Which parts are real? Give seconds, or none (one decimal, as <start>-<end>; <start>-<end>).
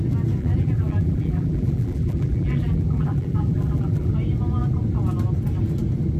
0.0-0.4; 4.1-6.2